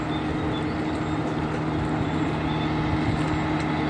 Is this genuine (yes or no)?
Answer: yes